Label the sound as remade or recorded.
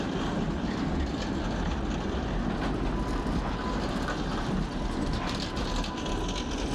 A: recorded